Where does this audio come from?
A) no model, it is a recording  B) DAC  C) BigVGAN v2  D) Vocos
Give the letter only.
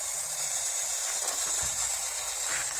A